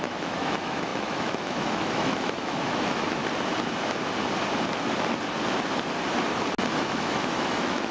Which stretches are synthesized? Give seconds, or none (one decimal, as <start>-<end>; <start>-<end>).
0.0-3.2; 6.8-7.9